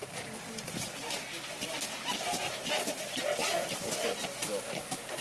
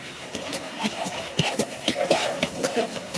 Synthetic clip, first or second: second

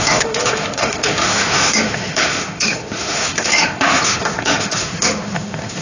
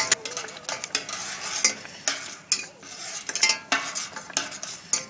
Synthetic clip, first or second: first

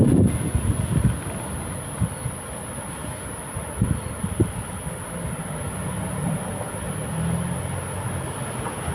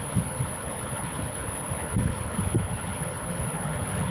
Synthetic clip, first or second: second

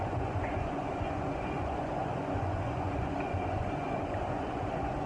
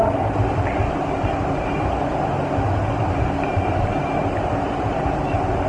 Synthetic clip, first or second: first